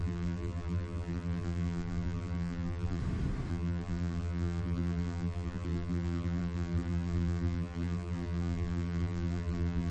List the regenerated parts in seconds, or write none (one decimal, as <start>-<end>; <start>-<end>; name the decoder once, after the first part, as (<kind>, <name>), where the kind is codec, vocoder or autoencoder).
0.0-3.0 (vocoder, BigVGAN v2); 3.5-9.9